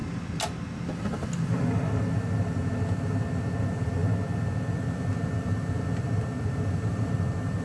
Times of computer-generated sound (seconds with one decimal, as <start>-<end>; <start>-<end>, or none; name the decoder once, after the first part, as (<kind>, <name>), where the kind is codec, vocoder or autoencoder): none